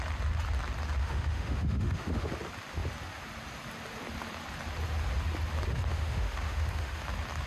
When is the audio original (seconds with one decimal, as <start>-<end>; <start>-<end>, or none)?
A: 0.0-1.0; 2.3-5.9; 7.0-7.5